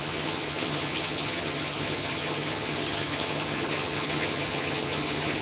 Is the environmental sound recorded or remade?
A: remade